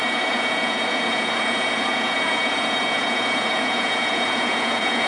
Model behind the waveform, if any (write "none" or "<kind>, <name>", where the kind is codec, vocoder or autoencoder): vocoder, Vocos